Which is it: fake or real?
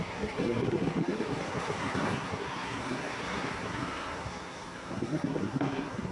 fake